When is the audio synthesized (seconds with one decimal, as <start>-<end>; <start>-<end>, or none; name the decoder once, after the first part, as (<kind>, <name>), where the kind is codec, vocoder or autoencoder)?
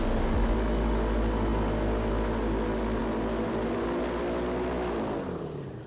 none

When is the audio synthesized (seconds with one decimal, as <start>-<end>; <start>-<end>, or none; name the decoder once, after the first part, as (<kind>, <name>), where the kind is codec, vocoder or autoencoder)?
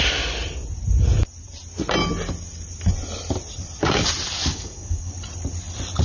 4.5-5.1 (codec, DAC)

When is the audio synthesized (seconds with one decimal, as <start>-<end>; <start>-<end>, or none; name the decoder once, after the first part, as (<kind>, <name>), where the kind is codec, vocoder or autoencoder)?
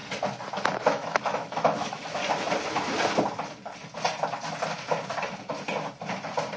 0.8-2.2 (autoencoder, DAC-VAE)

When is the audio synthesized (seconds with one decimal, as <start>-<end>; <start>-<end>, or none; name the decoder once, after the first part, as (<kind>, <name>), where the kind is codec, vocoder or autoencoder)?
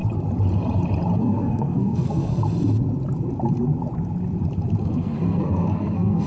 1.2-2.3 (codec, SNAC); 4.8-6.3